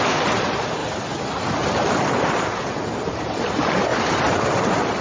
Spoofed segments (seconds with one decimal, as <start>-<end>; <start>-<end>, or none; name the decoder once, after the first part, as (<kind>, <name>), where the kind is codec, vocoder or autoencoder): 0.0-0.8 (vocoder, BigVGAN v2); 1.9-5.0